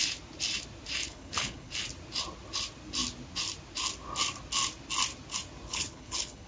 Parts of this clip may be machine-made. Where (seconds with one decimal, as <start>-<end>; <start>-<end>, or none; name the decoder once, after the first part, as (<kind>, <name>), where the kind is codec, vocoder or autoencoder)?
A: 1.0-1.7 (codec, HILCodec); 5.7-6.5